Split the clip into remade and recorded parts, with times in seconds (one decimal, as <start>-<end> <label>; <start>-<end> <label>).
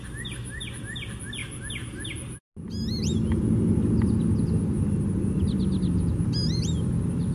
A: 0.0-7.3 recorded